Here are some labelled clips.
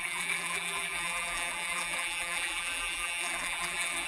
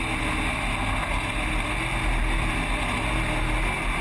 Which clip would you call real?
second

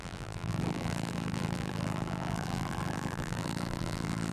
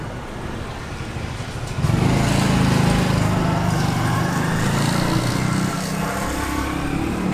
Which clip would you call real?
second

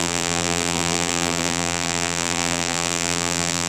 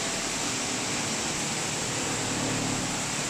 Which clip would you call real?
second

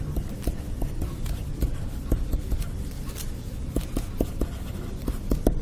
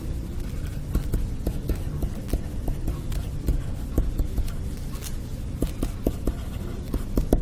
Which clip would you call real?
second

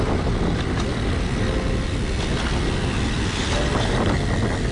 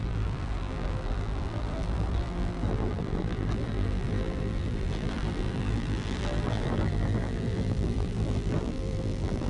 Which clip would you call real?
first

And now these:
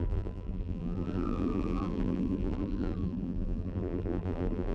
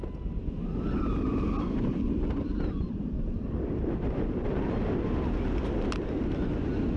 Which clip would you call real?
second